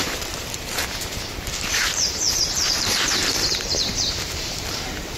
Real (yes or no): no